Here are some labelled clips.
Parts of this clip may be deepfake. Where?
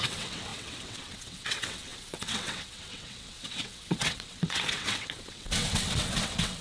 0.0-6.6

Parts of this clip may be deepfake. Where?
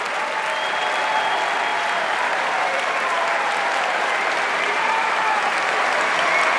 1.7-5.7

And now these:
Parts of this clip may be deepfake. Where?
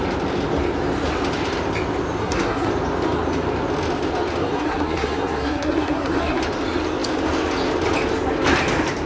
2.2-2.7; 4.4-6.4